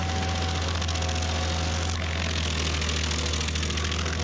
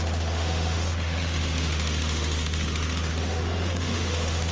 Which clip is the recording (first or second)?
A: first